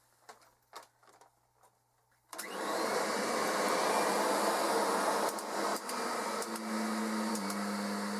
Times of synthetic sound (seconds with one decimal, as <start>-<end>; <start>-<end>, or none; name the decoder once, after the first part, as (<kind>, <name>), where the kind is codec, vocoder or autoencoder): none